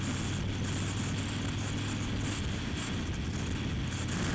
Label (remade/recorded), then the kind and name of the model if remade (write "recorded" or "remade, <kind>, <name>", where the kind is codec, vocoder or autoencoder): recorded